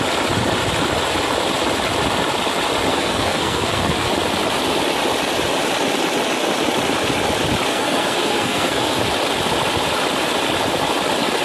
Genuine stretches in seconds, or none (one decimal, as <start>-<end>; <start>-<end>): 0.0-2.9; 4.1-7.7; 9.0-11.4